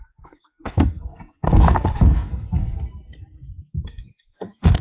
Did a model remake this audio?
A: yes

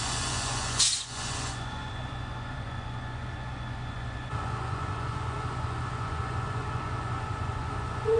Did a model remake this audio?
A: yes